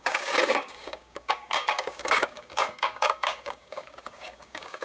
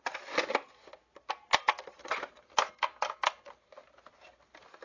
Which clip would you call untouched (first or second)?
second